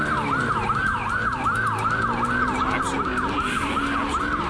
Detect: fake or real real